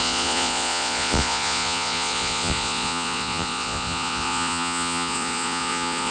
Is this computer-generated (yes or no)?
yes